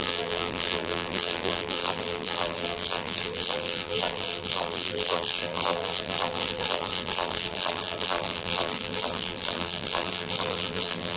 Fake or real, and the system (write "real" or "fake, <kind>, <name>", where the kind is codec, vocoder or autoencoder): fake, vocoder, BigVGAN v2